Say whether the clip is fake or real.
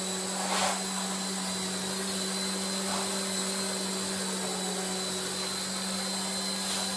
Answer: real